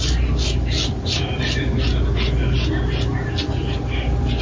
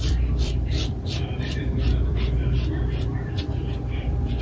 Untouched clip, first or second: first